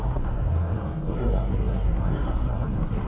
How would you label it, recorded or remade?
remade